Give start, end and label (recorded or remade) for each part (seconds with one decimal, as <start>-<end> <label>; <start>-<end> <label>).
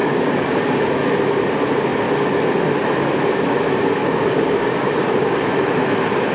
0.0-1.0 remade; 1.0-4.0 recorded; 4.0-5.4 remade; 5.4-6.3 recorded